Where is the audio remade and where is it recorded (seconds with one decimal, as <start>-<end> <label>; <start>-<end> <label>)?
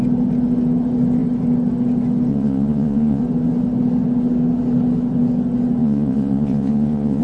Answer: 0.0-2.3 recorded; 2.3-3.2 remade; 3.2-5.8 recorded; 5.8-7.2 remade